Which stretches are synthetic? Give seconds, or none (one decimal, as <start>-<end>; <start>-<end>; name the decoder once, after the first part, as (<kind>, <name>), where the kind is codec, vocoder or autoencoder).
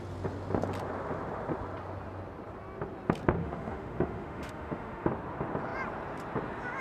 3.4-5.1 (autoencoder, DAC-VAE)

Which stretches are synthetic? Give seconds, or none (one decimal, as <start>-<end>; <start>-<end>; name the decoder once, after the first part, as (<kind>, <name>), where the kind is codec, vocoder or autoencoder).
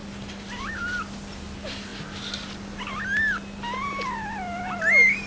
none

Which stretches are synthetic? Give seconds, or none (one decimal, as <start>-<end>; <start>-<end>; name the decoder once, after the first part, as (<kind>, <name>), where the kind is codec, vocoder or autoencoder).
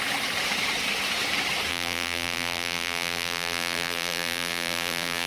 1.7-5.3 (vocoder, BigVGAN v2)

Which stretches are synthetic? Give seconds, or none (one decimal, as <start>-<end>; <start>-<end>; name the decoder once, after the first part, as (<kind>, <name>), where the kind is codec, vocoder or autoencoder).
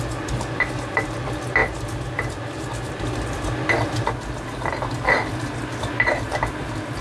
none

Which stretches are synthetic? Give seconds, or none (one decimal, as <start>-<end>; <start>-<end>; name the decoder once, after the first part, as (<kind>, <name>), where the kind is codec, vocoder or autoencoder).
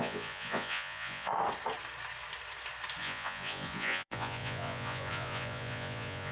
0.0-1.3 (vocoder, Vocos); 3.0-6.3